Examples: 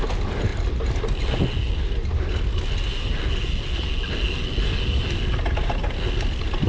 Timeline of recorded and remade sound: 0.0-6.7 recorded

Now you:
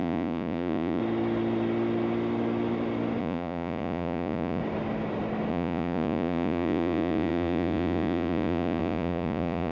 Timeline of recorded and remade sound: 0.0-1.0 remade; 1.0-3.2 recorded; 3.2-4.6 remade; 4.6-5.5 recorded; 5.5-9.7 remade